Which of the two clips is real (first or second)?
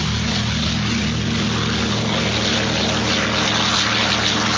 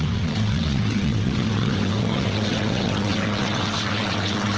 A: first